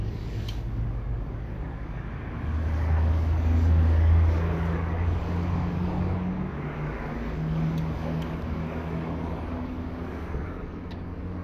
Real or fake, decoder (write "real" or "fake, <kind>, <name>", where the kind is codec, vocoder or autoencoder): fake, codec, DAC